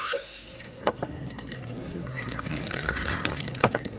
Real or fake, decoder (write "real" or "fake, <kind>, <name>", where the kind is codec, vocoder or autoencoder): fake, codec, SNAC